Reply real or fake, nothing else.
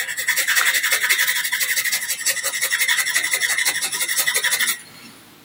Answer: real